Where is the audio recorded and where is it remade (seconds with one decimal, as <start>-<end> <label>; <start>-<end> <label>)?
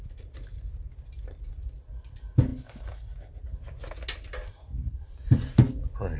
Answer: 0.0-6.2 recorded